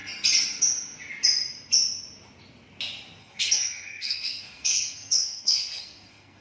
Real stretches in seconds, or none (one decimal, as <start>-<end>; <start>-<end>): 0.0-3.2